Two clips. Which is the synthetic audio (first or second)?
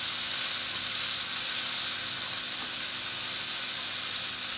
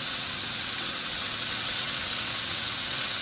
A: second